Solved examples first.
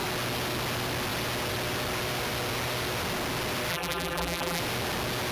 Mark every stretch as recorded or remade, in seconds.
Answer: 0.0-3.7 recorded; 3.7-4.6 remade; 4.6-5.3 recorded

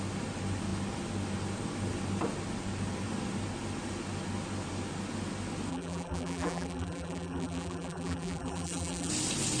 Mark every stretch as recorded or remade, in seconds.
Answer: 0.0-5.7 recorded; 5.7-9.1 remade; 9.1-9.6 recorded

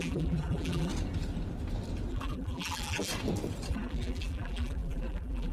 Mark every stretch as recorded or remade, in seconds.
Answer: 0.0-0.9 remade; 0.9-2.1 recorded; 2.1-3.1 remade; 3.1-3.7 recorded; 3.7-5.5 remade